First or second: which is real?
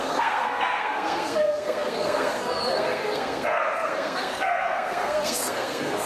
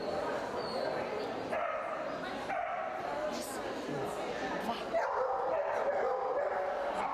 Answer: second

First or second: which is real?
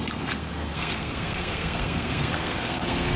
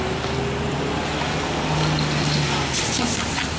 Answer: second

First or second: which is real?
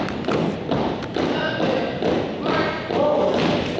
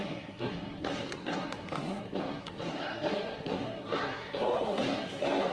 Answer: first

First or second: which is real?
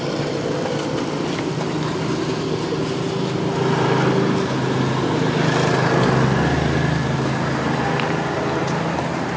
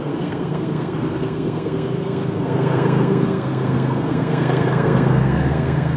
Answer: first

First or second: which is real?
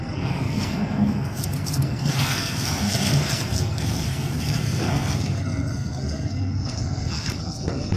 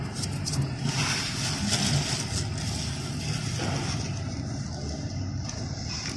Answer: second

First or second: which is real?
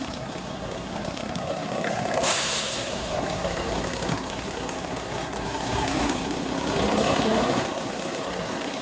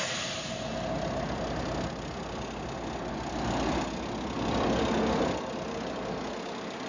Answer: second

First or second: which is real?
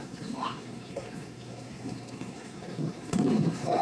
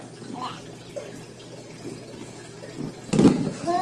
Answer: second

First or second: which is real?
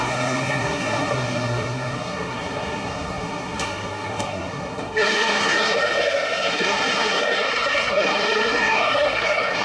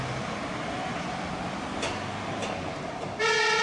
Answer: second